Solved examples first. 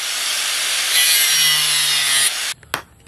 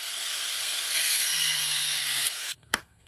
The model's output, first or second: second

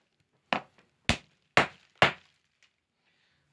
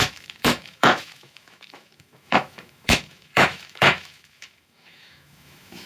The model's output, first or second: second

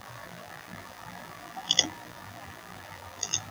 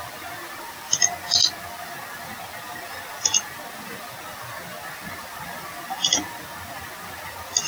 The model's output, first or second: first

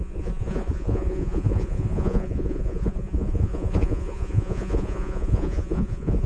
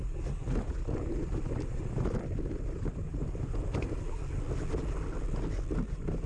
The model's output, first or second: first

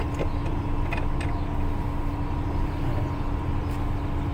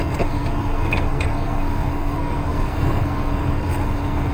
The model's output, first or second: second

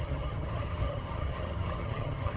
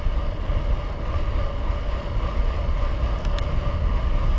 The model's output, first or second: first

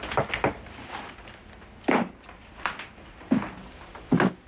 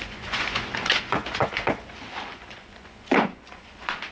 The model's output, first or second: second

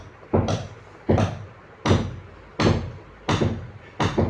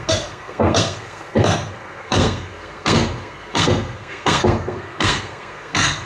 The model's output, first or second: second